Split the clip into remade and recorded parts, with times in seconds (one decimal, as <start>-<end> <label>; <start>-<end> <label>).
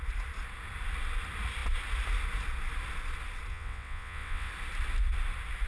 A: 0.0-3.5 recorded; 3.5-4.5 remade; 4.5-5.7 recorded